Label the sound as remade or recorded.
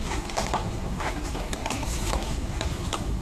remade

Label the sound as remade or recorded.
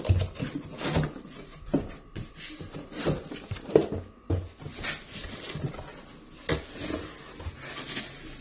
recorded